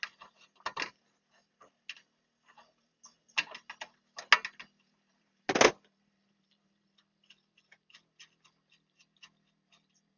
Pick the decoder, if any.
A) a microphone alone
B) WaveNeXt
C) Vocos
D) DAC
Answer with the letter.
A